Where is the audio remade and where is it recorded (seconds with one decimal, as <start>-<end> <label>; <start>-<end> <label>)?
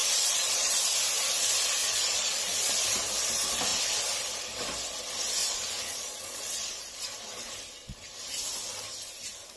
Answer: 0.0-0.7 remade; 0.7-1.8 recorded; 1.8-2.7 remade; 2.7-5.4 recorded; 5.4-6.8 remade; 6.8-9.6 recorded